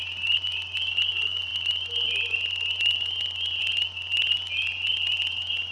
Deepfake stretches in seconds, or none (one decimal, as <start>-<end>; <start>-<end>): none